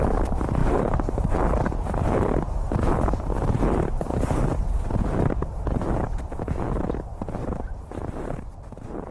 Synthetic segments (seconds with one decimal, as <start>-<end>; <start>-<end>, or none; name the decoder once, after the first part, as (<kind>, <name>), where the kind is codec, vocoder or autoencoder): 0.6-1.3 (vocoder, BigVGAN v2); 7.1-8.2